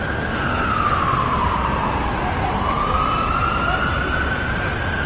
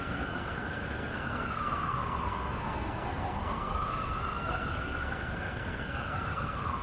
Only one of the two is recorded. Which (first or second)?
first